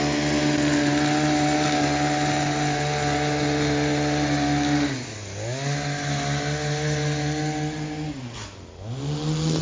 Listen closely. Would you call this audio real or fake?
real